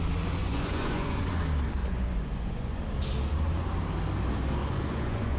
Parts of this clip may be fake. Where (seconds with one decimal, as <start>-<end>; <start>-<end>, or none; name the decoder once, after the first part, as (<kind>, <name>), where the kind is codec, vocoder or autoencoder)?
0.4-1.4 (vocoder, Vocos); 1.8-2.8; 4.6-5.4